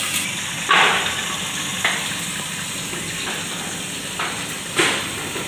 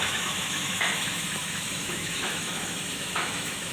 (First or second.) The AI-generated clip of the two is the second